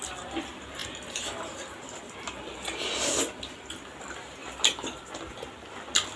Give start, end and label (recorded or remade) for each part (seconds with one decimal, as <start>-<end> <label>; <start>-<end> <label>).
0.0-0.8 recorded; 0.8-3.2 remade; 3.2-4.4 recorded; 4.4-5.0 remade; 5.0-6.2 recorded